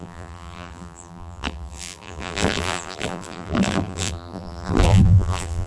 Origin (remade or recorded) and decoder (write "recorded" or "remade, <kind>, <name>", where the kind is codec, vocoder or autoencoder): remade, vocoder, BigVGAN v2